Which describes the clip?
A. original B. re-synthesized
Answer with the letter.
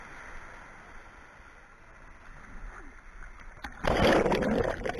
A